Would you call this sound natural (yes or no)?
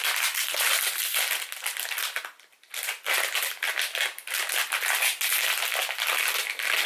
yes